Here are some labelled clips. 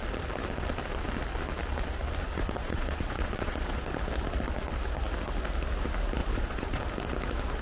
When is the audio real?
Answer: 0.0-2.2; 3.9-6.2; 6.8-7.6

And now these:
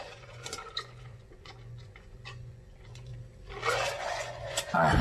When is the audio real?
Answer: 3.1-3.7

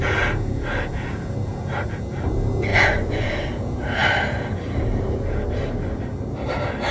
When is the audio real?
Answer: 0.0-2.7; 3.3-6.9

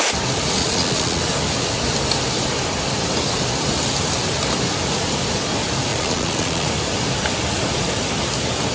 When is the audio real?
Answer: 0.0-0.6; 1.2-5.9; 6.7-8.7

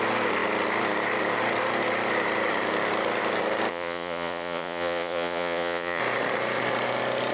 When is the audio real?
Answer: 0.0-3.7; 6.0-7.3

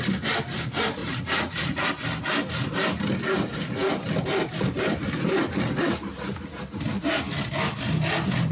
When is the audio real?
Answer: 0.0-1.0; 1.9-8.5

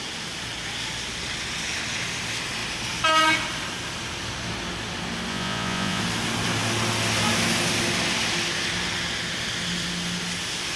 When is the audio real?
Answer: 0.0-5.3; 6.0-10.8